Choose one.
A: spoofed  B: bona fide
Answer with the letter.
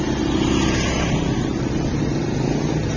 B